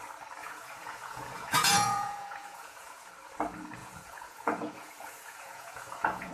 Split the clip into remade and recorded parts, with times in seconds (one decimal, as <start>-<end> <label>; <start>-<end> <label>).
0.0-0.4 recorded; 0.4-3.1 remade; 3.1-3.8 recorded; 3.8-6.3 remade